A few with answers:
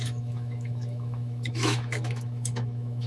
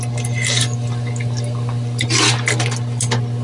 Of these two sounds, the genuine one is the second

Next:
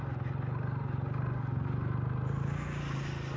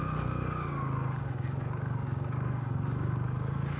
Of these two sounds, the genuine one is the first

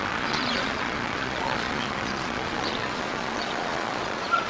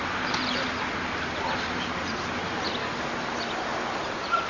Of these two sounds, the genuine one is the second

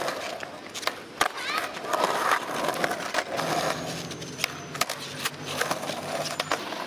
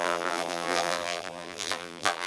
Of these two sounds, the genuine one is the first